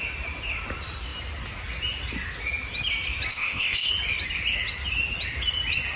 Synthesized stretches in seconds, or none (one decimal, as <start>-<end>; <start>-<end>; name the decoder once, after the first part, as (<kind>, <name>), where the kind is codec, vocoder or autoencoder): 3.3-3.9 (codec, ZipCodec)